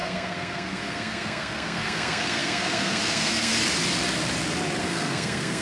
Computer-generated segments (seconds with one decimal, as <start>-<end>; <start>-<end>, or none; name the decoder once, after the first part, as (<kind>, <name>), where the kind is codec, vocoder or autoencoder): 0.0-3.5 (codec, SNAC); 4.8-5.6